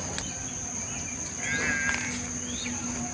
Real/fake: real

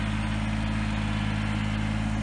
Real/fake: real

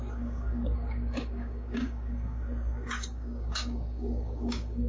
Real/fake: fake